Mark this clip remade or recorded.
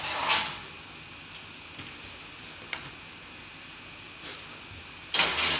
recorded